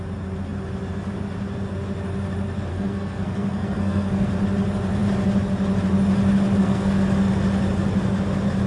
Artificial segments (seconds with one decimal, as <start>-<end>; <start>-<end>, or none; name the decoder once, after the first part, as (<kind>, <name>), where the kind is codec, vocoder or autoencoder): 2.7-4.3 (codec, SNAC); 6.6-7.1

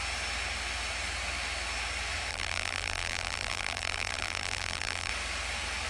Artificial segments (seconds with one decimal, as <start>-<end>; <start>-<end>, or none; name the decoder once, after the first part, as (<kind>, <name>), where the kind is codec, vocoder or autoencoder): 2.3-5.1 (vocoder, BigVGAN v2)

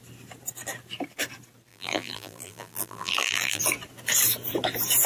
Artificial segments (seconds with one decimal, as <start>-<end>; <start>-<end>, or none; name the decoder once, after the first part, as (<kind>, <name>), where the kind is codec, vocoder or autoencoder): 1.7-3.6 (vocoder, BigVGAN v2)